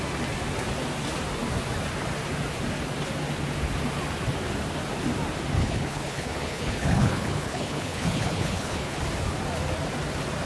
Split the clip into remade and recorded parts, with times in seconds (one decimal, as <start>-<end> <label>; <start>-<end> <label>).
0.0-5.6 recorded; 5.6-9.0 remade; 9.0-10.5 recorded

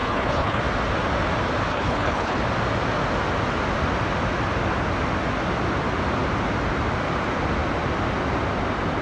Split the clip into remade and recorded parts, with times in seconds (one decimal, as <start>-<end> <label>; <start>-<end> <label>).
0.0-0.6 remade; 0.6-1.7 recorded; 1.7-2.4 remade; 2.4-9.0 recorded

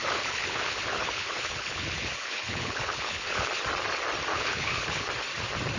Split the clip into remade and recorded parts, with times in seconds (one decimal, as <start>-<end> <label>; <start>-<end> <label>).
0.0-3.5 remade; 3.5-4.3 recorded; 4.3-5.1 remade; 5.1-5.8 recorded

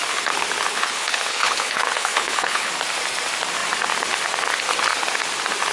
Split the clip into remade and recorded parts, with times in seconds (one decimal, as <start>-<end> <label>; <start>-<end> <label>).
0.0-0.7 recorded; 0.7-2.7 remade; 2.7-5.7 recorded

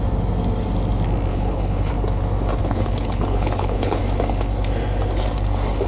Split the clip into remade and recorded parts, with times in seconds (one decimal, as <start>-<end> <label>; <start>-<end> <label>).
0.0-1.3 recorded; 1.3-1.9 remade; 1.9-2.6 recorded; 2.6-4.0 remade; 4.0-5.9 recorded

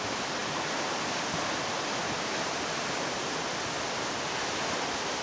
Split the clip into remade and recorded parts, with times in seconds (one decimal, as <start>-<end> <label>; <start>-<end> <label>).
0.0-5.2 recorded